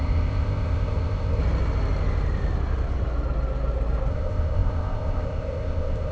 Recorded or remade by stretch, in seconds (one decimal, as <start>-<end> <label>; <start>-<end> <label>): 0.0-1.4 remade; 1.4-4.1 recorded; 4.1-6.1 remade